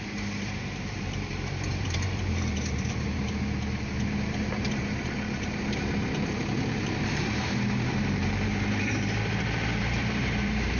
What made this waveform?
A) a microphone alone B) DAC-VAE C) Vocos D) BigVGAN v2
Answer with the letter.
D